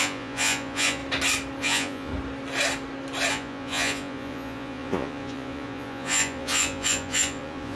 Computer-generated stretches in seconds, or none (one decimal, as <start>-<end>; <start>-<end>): 0.0-1.0; 1.6-2.1; 3.3-7.8